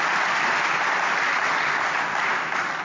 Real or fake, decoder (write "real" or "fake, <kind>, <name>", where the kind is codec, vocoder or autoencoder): real